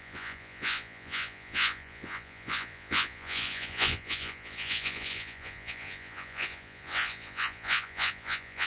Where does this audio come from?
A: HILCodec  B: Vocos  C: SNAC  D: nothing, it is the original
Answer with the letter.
B